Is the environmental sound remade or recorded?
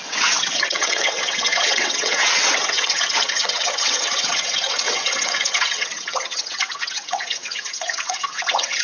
remade